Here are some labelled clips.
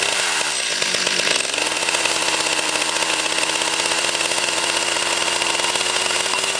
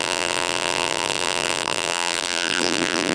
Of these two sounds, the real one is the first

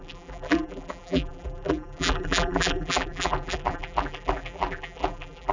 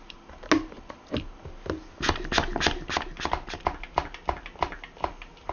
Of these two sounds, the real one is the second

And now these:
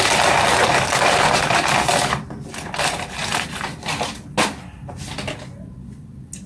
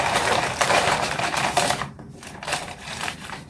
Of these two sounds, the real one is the first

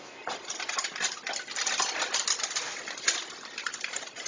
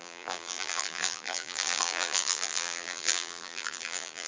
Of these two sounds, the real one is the first